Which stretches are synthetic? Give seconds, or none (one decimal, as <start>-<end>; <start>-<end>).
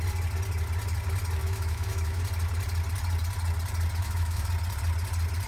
1.4-2.2; 4.0-4.5